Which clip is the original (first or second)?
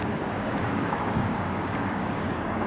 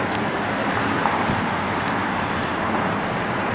second